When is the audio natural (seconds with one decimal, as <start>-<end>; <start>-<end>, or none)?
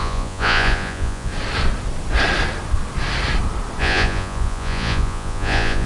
1.3-3.8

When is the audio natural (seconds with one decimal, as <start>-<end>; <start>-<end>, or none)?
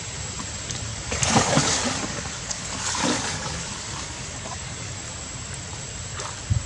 0.0-0.9; 4.9-6.7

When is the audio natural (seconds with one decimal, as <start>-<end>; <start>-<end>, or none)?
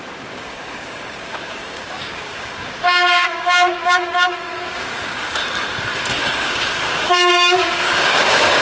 5.4-6.1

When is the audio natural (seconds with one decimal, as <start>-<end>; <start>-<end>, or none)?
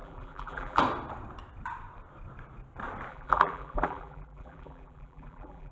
0.8-3.1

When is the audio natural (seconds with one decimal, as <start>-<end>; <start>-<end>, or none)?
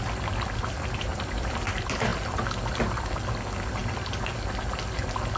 0.0-1.1; 1.7-2.1; 2.7-3.8; 5.0-5.4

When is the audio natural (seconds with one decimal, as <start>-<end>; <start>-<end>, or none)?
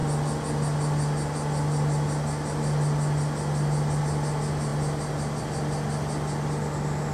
0.0-7.1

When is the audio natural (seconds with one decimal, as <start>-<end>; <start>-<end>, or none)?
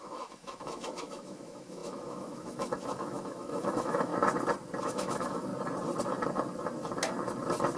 4.1-4.8; 5.5-7.8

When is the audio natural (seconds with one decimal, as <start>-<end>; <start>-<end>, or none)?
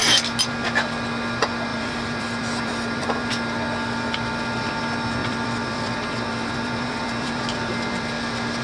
0.0-1.7; 3.3-5.2; 7.7-8.6